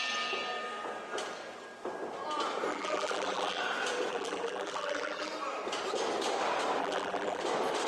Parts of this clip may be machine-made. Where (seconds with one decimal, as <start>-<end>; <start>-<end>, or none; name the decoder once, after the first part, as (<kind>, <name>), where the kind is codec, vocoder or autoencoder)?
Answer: 2.7-3.6 (vocoder, BigVGAN v2); 4.1-5.3; 6.8-7.4